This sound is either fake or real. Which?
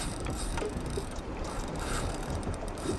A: fake